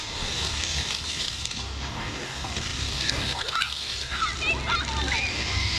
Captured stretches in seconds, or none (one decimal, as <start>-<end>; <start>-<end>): 4.2-5.3